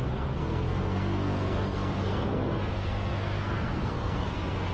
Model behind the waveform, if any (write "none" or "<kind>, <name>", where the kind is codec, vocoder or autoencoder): codec, SNAC